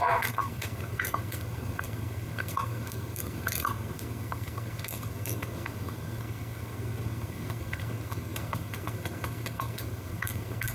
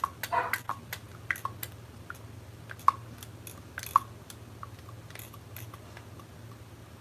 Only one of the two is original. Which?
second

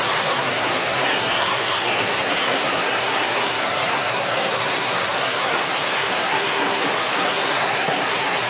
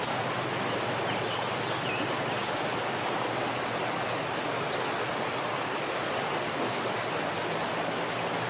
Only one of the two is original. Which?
second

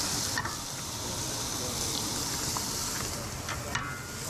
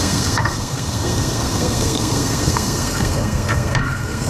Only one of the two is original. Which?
first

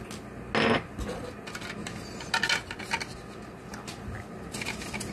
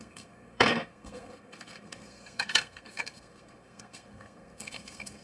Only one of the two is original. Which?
first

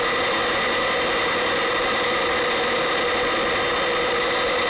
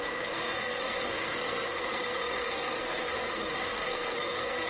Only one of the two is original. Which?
first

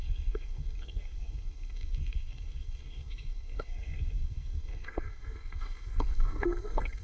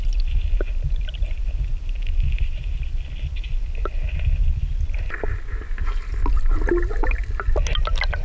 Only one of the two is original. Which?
second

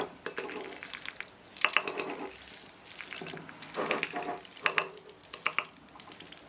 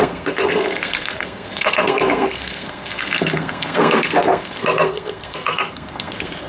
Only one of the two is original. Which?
first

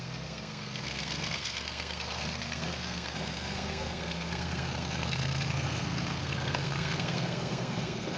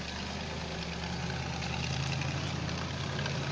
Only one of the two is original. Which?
second